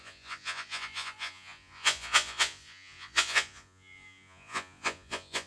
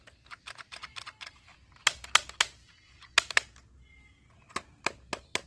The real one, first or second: second